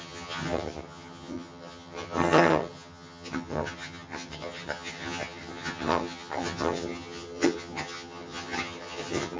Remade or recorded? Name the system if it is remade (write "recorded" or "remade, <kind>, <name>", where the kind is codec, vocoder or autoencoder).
remade, vocoder, HiFi-GAN